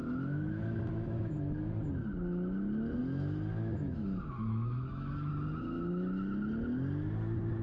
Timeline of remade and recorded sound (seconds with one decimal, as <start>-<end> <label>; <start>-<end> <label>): 0.0-1.7 remade; 1.7-3.0 recorded; 3.0-5.3 remade; 5.3-7.6 recorded